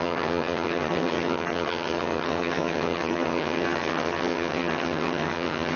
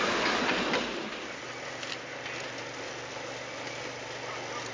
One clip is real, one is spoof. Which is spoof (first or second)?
first